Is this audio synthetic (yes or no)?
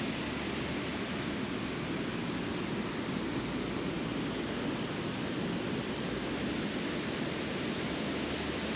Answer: no